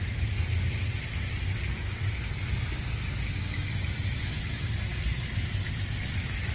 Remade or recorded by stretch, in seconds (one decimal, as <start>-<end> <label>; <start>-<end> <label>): 0.0-6.5 recorded